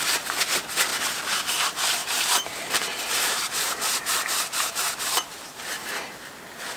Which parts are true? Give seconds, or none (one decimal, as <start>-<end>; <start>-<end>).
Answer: 0.0-2.0; 6.1-6.8